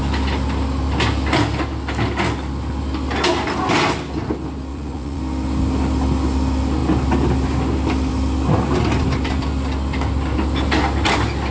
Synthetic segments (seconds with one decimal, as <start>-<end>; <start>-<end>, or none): 4.7-5.2